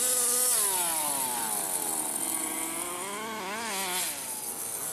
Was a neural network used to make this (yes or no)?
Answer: no